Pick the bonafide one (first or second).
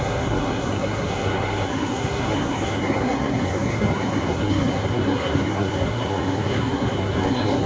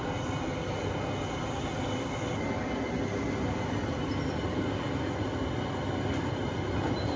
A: second